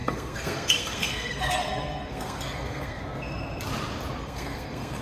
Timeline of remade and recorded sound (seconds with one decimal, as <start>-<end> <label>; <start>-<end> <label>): 0.0-3.0 remade; 3.0-4.2 recorded; 4.2-5.0 remade